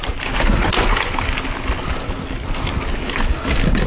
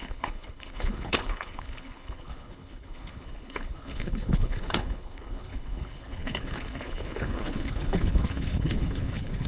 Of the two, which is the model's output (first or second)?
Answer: second